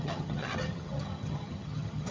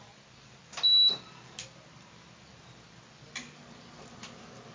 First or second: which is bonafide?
second